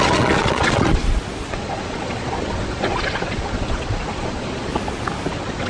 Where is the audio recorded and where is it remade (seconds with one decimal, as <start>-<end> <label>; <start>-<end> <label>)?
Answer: 0.0-1.0 remade; 1.0-1.5 recorded; 1.5-4.7 remade; 4.7-5.3 recorded; 5.3-5.7 remade